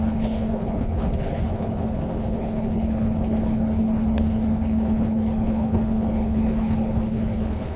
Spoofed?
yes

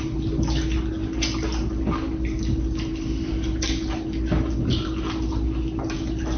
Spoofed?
no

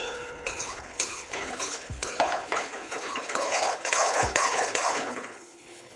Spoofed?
yes